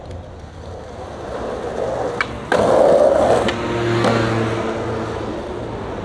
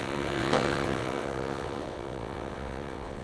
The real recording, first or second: first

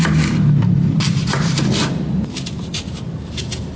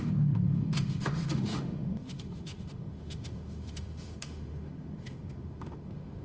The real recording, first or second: first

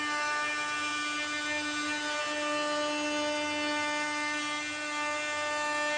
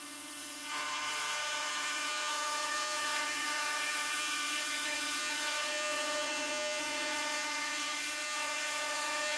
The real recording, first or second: first